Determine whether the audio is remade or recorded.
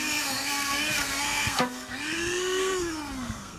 remade